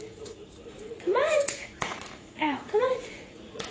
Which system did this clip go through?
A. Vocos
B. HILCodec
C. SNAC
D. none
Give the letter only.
A